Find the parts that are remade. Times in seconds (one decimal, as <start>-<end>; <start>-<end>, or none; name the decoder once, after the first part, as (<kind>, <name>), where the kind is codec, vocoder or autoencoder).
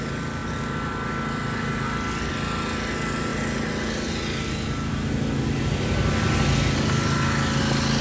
none